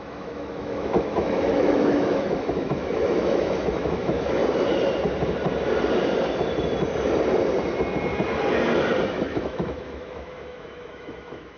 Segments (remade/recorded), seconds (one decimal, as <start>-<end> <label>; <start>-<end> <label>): 0.0-4.4 remade; 4.4-9.1 recorded; 9.1-11.6 remade